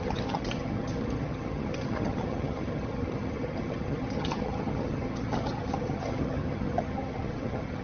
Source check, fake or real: fake